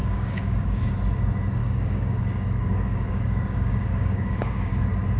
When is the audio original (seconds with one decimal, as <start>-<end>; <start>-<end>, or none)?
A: 0.9-1.6; 4.7-5.2